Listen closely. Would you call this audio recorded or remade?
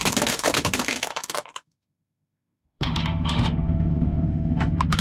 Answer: remade